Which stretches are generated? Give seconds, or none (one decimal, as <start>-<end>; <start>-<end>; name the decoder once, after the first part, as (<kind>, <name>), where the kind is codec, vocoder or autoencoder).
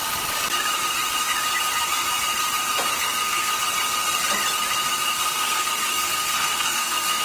2.9-3.5 (codec, SNAC); 5.1-7.2